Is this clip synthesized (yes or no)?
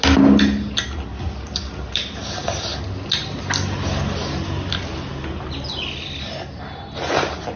no